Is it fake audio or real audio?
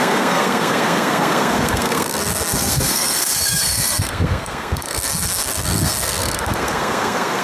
fake